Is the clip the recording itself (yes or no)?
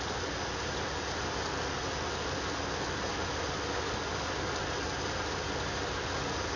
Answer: yes